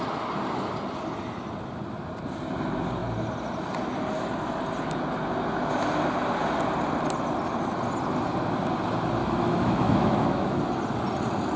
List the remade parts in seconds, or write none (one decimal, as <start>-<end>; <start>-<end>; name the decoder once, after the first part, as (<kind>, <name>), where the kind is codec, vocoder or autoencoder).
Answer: 9.2-10.6 (autoencoder, DAC-VAE)